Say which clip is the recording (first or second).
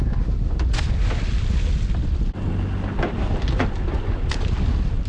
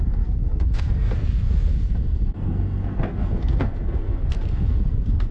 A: first